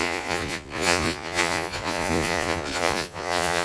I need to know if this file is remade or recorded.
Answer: remade